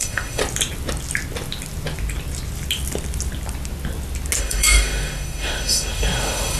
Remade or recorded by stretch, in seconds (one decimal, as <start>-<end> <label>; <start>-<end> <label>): 0.0-0.4 remade; 0.4-4.4 recorded; 4.4-6.6 remade

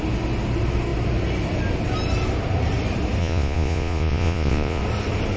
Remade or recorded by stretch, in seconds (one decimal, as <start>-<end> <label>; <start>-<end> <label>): 0.0-3.2 recorded; 3.2-4.8 remade; 4.8-5.4 recorded

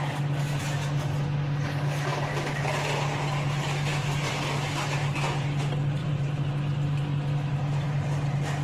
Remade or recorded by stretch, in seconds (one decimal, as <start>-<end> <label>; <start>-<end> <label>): 0.0-6.0 recorded; 6.0-6.5 remade; 6.5-8.6 recorded

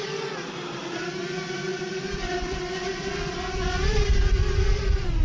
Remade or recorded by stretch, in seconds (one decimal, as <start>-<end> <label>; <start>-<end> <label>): 0.0-4.4 remade; 4.4-5.2 recorded